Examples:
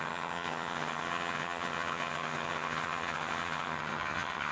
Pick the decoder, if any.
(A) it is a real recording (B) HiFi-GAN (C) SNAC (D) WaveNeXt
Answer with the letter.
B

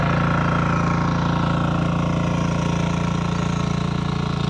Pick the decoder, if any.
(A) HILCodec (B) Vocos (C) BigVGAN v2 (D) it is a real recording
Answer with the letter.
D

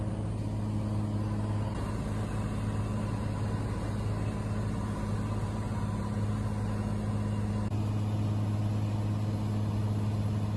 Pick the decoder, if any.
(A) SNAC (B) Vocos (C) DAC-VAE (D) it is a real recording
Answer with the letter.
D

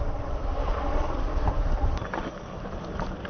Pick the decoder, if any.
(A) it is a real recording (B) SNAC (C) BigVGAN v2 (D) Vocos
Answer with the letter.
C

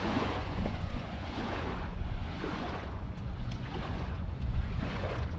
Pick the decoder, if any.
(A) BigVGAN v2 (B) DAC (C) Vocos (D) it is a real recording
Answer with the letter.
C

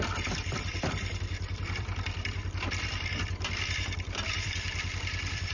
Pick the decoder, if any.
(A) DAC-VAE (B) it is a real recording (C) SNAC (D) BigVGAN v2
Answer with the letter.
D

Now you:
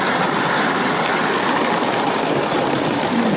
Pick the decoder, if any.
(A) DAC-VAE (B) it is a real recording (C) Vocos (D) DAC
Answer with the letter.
B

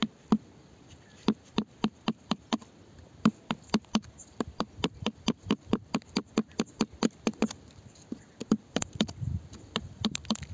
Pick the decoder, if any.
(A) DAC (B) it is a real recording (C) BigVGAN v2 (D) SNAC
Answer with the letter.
B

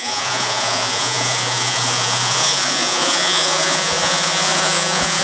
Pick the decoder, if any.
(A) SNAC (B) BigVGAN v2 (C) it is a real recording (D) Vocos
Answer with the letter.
D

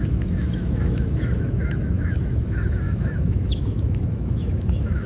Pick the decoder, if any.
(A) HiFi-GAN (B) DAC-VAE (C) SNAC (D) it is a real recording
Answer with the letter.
B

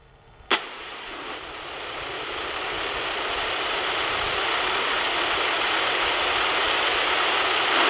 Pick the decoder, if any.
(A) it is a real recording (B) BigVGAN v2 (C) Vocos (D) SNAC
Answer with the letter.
A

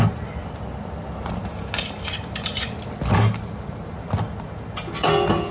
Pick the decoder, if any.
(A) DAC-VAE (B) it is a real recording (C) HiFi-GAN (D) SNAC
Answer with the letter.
B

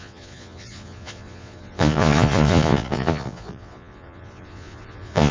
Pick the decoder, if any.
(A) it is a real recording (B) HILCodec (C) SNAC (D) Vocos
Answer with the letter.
D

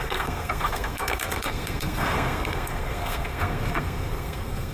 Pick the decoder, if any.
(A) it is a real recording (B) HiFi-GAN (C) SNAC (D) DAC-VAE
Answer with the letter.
C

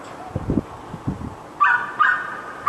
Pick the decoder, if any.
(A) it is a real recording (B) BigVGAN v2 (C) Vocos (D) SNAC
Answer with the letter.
A